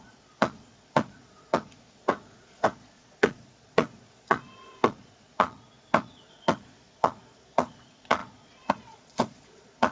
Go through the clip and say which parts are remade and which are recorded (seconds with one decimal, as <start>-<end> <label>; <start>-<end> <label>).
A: 0.0-9.9 remade